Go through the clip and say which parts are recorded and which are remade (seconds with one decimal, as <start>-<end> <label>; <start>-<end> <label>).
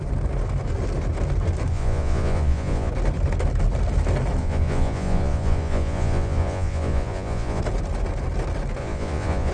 0.0-1.7 recorded; 1.7-2.9 remade; 2.9-4.4 recorded; 4.4-7.6 remade; 7.6-8.8 recorded; 8.8-9.5 remade